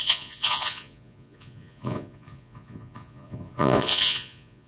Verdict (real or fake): fake